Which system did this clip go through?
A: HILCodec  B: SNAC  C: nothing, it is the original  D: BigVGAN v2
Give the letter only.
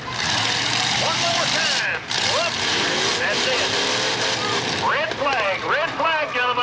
D